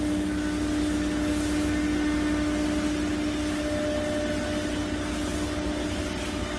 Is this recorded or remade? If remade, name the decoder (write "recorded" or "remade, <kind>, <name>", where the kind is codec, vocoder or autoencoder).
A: recorded